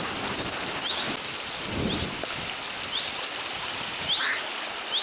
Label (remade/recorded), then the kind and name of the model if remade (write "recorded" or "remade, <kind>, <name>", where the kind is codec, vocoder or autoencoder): recorded